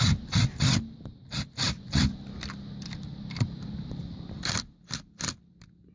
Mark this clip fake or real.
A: real